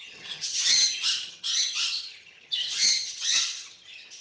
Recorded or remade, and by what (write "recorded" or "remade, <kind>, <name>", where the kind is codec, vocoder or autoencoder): remade, vocoder, HiFi-GAN